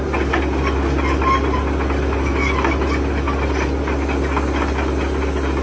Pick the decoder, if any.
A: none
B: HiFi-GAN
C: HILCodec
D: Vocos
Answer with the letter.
A